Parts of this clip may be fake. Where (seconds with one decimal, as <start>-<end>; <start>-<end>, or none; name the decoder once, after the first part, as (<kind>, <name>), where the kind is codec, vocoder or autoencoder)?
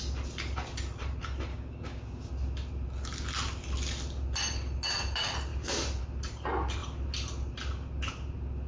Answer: 1.5-2.3 (codec, DAC)